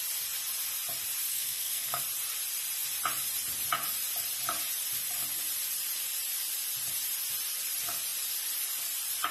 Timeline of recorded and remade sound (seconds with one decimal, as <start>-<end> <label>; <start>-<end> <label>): 0.0-1.3 recorded; 1.3-2.0 remade; 2.0-9.3 recorded